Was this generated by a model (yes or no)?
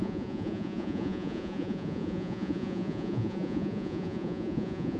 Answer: yes